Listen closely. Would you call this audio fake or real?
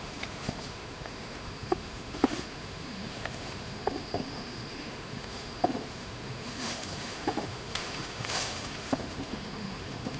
fake